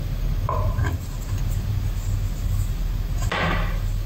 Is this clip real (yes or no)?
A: yes